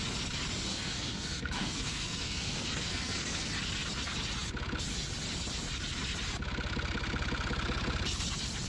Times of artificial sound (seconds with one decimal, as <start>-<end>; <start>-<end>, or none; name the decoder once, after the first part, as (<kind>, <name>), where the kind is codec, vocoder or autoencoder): 0.7-3.5 (codec, SNAC)